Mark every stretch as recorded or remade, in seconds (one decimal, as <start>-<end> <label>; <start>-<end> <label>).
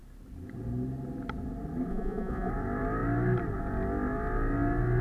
0.0-1.9 recorded; 1.9-2.5 remade; 2.5-5.0 recorded